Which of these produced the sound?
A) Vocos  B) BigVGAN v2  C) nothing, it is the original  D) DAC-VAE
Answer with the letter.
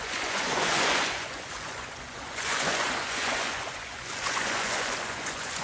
A